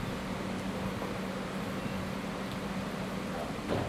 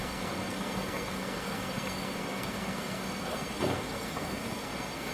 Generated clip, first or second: second